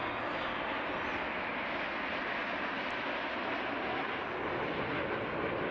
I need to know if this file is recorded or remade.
recorded